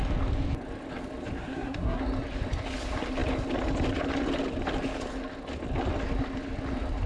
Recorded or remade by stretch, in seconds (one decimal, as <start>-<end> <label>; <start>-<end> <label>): 0.0-1.4 recorded; 1.4-2.0 remade; 2.0-7.1 recorded